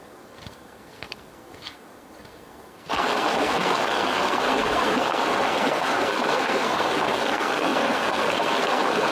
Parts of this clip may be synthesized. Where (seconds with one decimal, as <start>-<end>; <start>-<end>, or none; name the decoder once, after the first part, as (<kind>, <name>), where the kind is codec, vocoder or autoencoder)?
0.0-9.1 (codec, SNAC)